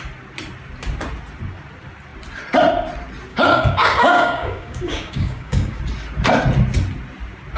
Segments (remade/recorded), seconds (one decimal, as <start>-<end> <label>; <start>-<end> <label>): 0.0-3.3 recorded; 3.3-5.8 remade; 5.8-7.6 recorded